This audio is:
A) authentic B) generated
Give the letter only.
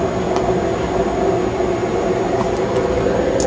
A